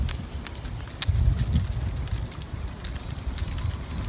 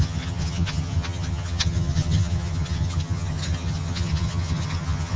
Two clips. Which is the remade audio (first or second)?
second